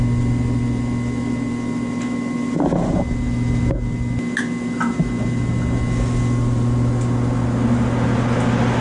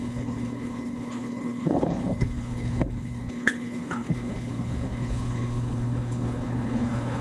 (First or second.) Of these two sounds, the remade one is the second